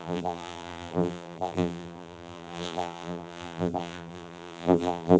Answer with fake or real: fake